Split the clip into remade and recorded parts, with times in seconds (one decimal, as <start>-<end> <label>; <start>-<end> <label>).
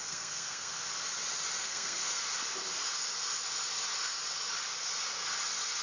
0.0-0.9 remade; 0.9-1.6 recorded; 1.6-2.2 remade; 2.2-5.8 recorded